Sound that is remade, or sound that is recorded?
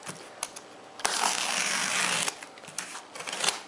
recorded